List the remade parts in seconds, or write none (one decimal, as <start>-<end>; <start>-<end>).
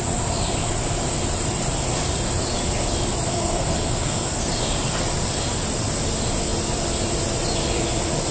3.3-4.5